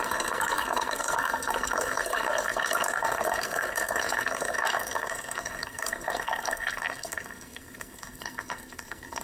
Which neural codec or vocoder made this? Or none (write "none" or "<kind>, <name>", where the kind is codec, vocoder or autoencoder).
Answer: codec, SNAC